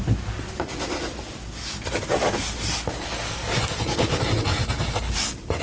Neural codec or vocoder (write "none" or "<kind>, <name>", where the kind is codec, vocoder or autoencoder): none